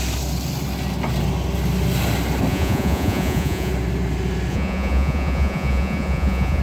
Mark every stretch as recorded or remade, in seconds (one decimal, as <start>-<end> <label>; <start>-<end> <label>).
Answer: 0.0-2.5 recorded; 2.5-3.7 remade; 3.7-4.5 recorded; 4.5-6.6 remade